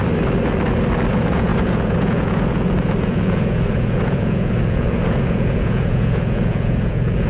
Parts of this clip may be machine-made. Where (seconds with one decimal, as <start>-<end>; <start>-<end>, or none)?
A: 1.1-7.3